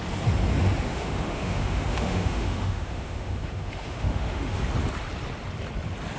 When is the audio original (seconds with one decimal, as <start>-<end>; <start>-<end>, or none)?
0.0-0.9; 4.6-6.2

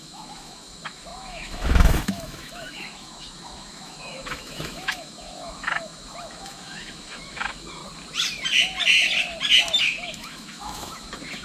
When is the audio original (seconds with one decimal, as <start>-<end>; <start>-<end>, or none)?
7.8-9.8

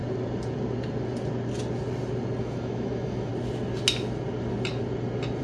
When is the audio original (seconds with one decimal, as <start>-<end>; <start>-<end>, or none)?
0.0-2.4; 3.3-5.4

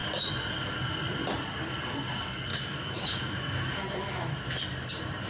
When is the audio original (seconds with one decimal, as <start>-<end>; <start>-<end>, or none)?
0.0-2.5; 4.6-5.3

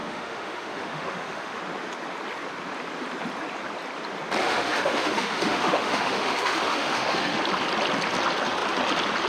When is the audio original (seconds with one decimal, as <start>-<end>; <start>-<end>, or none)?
1.6-4.4; 7.4-9.3